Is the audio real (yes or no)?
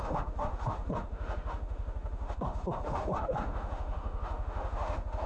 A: no